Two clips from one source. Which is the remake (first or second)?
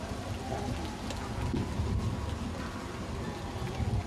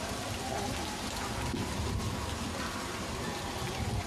second